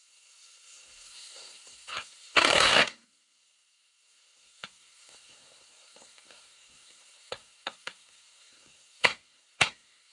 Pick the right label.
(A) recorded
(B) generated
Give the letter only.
B